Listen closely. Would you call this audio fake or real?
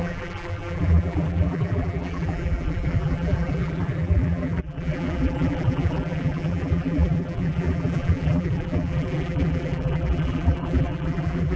fake